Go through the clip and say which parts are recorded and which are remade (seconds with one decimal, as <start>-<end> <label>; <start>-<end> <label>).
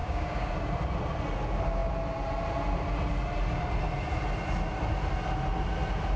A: 0.0-0.5 remade; 0.5-6.2 recorded